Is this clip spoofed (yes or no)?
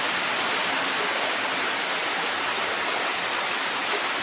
no